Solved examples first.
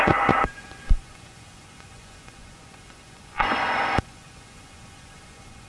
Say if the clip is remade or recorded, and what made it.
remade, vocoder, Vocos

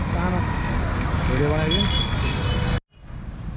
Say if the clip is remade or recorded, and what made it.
recorded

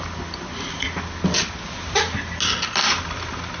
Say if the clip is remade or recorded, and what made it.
recorded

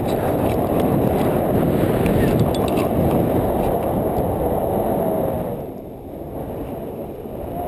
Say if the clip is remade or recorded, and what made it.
recorded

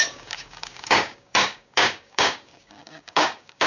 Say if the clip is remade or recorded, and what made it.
remade, codec, DAC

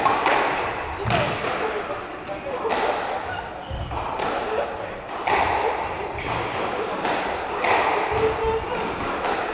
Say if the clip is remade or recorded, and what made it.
recorded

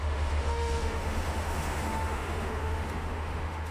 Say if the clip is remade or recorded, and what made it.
remade, autoencoder, DAC-VAE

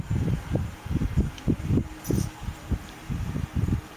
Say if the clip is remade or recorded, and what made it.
remade, vocoder, BigVGAN v2